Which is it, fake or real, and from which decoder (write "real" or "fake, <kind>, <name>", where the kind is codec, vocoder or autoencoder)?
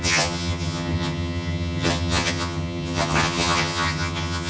fake, vocoder, HiFi-GAN